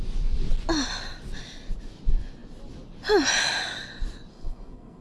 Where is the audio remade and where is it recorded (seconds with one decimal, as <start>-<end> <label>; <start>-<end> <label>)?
0.0-4.3 recorded; 4.3-5.0 remade